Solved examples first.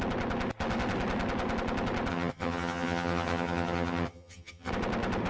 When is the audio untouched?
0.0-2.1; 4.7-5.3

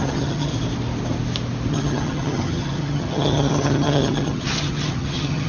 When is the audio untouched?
0.5-1.7

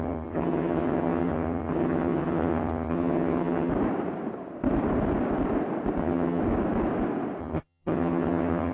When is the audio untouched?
3.7-6.0; 6.4-7.4